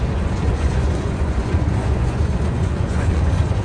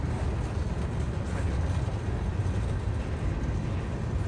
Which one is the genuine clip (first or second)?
second